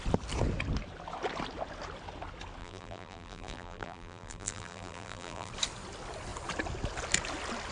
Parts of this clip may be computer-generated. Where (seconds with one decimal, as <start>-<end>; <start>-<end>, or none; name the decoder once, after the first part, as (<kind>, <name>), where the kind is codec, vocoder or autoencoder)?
2.6-5.5 (vocoder, BigVGAN v2)